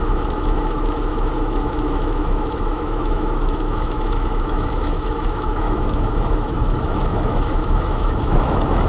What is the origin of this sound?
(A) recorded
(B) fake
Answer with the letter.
B